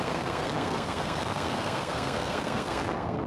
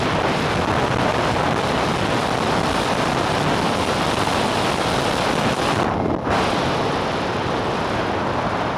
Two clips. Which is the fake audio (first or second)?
first